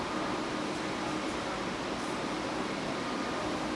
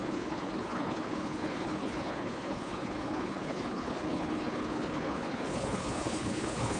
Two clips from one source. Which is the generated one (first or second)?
second